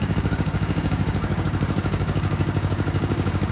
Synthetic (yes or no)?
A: yes